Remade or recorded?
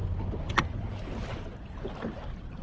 recorded